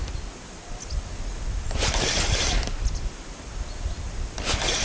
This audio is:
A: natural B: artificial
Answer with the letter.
A